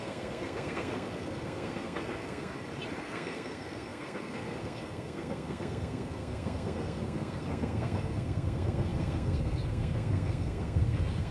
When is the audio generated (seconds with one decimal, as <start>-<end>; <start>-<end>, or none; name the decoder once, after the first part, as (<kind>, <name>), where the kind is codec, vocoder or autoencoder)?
0.0-2.5 (codec, SNAC); 3.0-11.3